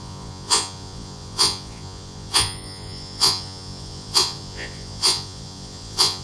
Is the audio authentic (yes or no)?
no